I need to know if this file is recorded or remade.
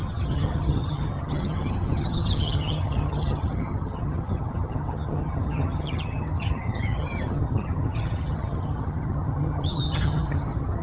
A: remade